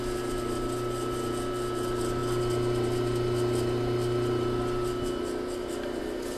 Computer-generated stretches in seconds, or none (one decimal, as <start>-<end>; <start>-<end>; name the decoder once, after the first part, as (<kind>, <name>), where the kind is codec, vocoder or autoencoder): none